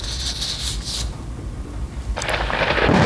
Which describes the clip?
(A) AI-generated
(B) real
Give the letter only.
B